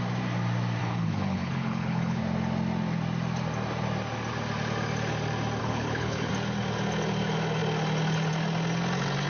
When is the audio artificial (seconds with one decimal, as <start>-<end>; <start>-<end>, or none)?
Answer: 0.8-2.2; 5.6-6.3